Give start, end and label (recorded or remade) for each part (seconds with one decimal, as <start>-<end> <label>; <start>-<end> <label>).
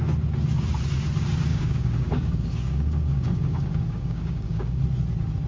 0.0-1.5 recorded; 1.5-4.8 remade; 4.8-5.5 recorded